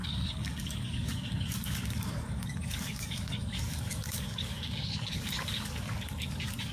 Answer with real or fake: fake